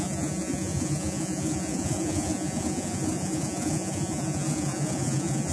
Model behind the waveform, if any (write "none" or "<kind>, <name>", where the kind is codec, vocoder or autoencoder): vocoder, Vocos